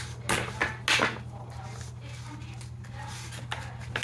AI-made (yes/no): no